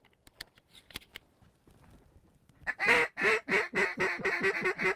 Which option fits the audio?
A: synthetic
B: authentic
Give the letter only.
B